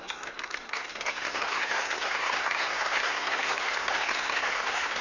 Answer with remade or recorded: remade